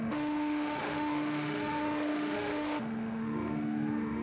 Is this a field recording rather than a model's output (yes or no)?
no